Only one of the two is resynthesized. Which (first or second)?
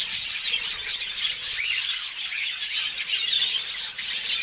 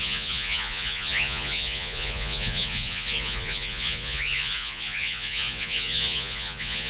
second